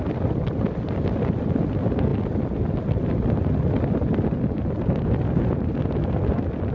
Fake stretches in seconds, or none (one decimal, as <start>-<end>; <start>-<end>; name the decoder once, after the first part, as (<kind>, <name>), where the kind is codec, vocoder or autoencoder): none

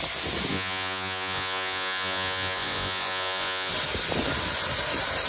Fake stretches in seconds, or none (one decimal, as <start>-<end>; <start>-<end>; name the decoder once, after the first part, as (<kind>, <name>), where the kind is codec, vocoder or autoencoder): 0.5-3.7 (vocoder, Vocos)